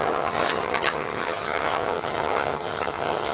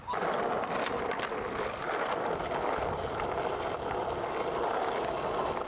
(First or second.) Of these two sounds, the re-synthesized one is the first